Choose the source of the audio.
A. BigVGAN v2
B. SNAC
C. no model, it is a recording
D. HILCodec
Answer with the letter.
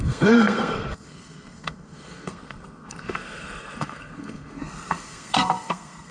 B